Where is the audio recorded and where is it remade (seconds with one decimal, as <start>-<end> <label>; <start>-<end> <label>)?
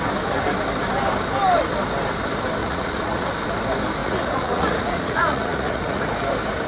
0.0-2.6 recorded; 2.6-3.3 remade; 3.3-4.0 recorded; 4.0-6.0 remade; 6.0-6.7 recorded